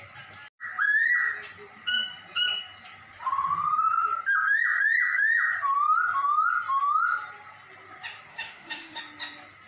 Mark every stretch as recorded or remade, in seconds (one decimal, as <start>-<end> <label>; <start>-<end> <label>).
0.0-8.3 recorded; 8.3-9.0 remade; 9.0-9.7 recorded